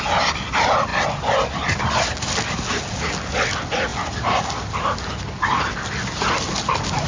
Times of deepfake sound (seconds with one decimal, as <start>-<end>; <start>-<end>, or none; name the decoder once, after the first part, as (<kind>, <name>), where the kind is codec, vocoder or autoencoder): none